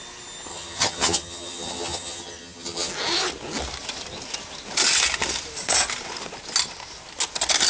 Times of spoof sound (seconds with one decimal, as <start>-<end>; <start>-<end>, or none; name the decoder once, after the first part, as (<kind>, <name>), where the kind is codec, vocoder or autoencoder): 0.5-2.9 (vocoder, HiFi-GAN)